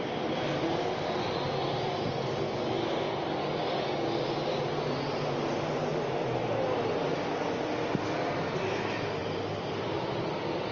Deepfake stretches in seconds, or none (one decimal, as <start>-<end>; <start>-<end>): none